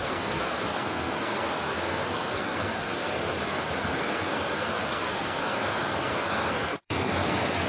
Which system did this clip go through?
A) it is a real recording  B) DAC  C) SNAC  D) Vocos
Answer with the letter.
C